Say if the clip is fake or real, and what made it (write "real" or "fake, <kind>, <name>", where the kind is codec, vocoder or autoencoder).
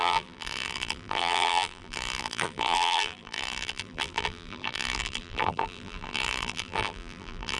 fake, vocoder, BigVGAN v2